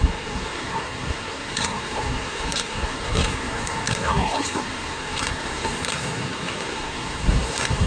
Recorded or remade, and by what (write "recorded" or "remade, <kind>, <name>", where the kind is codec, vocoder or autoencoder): remade, codec, SNAC